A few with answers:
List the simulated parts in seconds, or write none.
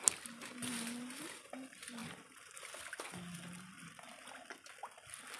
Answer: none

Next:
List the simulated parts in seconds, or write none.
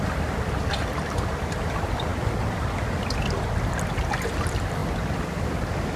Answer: none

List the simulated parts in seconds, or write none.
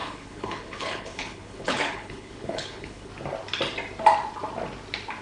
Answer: 0.0-3.1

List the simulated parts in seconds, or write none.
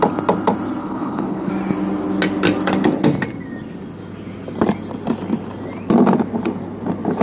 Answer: 0.8-1.5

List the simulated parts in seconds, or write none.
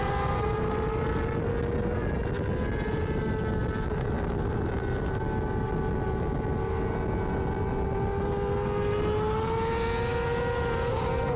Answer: none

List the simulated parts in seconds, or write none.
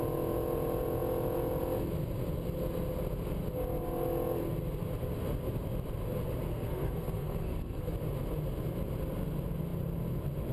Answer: 6.5-7.9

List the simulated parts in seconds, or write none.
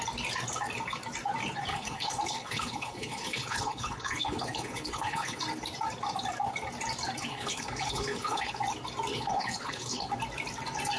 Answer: 1.7-5.4; 7.3-8.6; 9.1-10.1